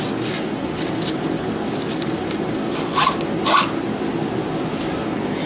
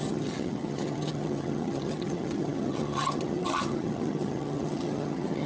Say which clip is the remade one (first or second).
second